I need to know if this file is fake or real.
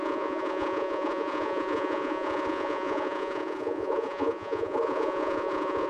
fake